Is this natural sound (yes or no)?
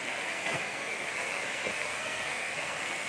no